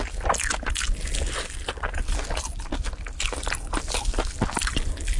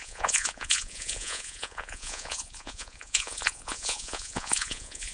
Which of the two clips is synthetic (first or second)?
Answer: second